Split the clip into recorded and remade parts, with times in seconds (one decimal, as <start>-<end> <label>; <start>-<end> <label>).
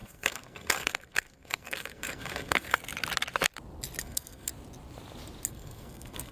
0.0-2.8 remade; 2.8-4.0 recorded; 4.0-4.5 remade; 4.5-5.5 recorded; 5.5-6.3 remade